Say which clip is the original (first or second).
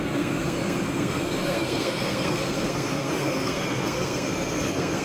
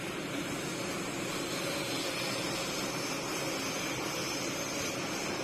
second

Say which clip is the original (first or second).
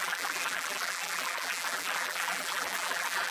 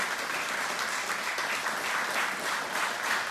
second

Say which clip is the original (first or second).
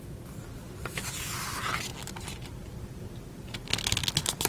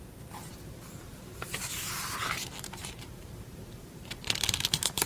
first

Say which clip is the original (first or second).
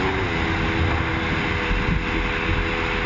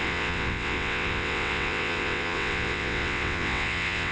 first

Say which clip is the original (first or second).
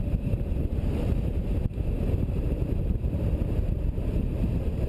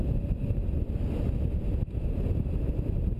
second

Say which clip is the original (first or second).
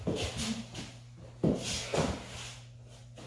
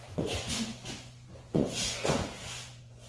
first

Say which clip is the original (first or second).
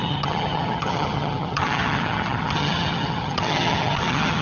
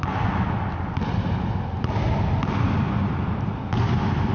second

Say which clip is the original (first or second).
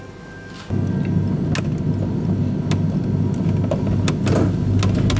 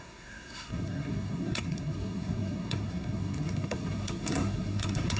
first